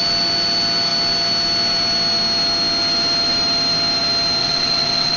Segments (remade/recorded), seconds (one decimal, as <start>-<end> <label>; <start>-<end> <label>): 0.0-4.4 recorded; 4.4-5.2 remade